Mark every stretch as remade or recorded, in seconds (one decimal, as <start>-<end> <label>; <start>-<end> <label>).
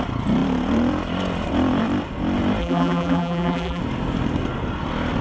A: 0.0-2.6 recorded; 2.6-3.8 remade; 3.8-5.2 recorded